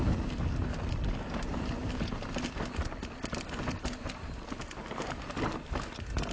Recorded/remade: recorded